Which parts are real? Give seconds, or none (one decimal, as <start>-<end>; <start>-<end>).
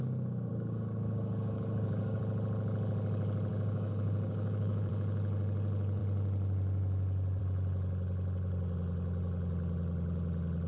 0.0-0.5; 2.2-3.5; 4.9-10.7